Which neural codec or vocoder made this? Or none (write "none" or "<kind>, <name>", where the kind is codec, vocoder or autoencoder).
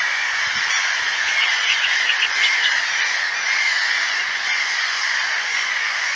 vocoder, Vocos